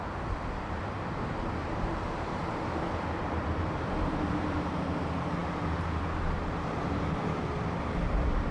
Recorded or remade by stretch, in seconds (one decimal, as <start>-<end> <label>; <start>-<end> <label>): 0.0-1.6 recorded; 1.6-4.8 remade; 4.8-5.4 recorded; 5.4-7.4 remade; 7.4-8.5 recorded